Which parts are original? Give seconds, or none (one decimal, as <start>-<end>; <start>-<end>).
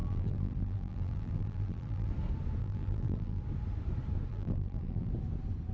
2.1-2.6; 3.4-4.3; 5.1-5.7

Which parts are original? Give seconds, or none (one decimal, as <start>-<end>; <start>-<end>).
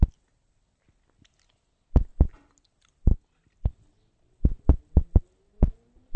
0.0-2.1; 2.7-6.2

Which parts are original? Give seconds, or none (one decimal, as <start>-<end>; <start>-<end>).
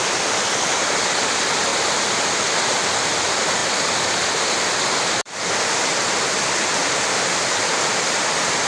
1.7-2.4; 3.6-4.6; 6.8-7.4